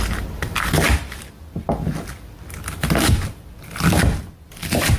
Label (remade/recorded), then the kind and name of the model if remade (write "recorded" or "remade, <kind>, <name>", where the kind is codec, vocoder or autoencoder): recorded